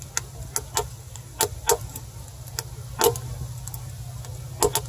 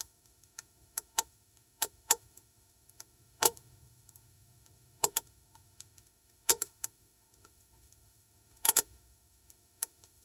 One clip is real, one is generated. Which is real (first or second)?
first